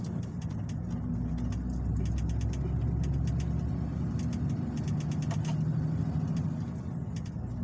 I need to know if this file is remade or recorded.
recorded